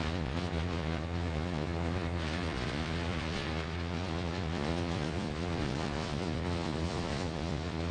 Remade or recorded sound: remade